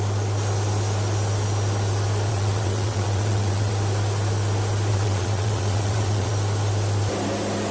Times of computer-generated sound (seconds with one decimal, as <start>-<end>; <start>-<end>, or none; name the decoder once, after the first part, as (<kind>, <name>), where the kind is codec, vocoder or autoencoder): 2.3-3.7 (vocoder, WaveNeXt); 4.9-6.3